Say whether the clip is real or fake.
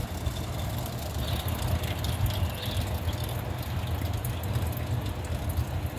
real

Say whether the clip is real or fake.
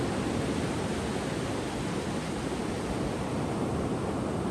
real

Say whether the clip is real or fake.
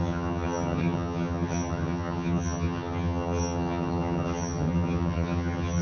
fake